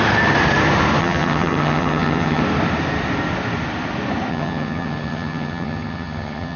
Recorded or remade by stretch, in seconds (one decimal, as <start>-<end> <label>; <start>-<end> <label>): 0.0-1.0 recorded; 1.0-2.4 remade; 2.4-4.3 recorded; 4.3-6.6 remade